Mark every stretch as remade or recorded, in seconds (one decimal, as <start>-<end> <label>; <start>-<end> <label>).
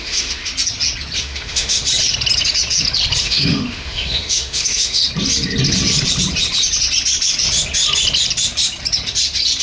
0.0-0.5 remade; 0.5-1.2 recorded; 1.2-1.8 remade; 1.8-3.2 recorded; 3.2-5.0 remade; 5.0-9.6 recorded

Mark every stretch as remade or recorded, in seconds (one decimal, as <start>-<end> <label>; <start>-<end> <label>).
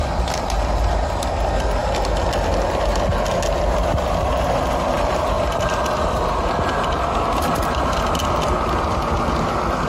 0.0-9.9 recorded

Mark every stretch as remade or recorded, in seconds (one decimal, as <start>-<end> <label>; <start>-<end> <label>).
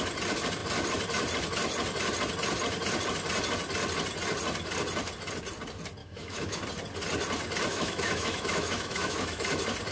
0.0-6.0 recorded; 6.0-6.6 remade; 6.6-7.7 recorded; 7.7-9.5 remade; 9.5-9.9 recorded